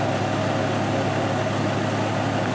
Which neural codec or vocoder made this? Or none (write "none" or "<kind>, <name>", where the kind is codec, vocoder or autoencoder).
none